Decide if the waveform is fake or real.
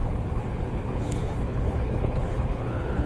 fake